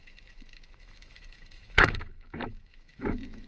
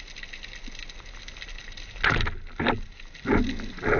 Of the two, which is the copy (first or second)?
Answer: first